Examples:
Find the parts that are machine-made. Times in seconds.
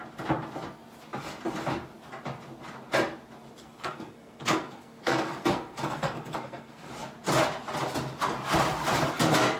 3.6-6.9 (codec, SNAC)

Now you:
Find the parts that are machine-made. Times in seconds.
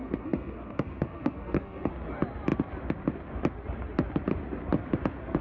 0.0-1.9 (codec, SNAC)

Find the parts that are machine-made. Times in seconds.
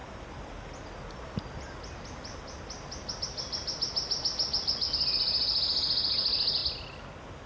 none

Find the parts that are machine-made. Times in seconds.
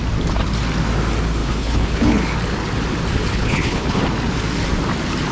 1.4-2.2 (codec, HILCodec); 3.3-4.0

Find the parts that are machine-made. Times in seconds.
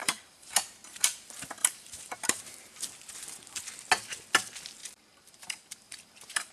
0.0-0.5 (vocoder, BigVGAN v2); 1.6-2.6; 4.8-6.5